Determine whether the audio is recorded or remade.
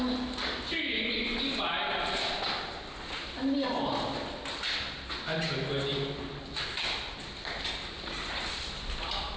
recorded